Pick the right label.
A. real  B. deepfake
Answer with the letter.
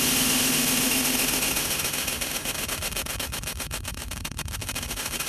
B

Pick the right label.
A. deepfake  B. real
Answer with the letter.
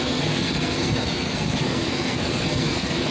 A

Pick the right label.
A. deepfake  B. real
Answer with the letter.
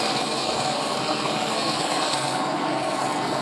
A